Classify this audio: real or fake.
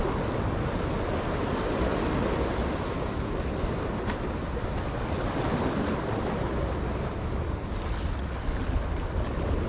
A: real